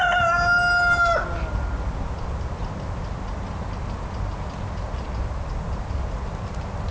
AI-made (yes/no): no